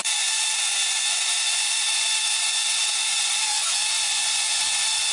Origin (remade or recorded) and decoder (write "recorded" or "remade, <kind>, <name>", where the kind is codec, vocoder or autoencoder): remade, vocoder, Vocos